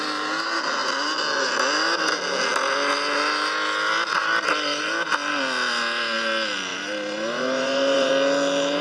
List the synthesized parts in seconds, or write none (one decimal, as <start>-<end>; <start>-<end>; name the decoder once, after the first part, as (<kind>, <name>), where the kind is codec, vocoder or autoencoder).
6.7-8.1 (vocoder, BigVGAN v2)